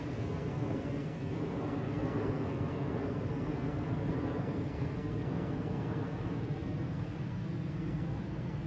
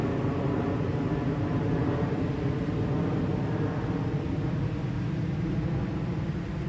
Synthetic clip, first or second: first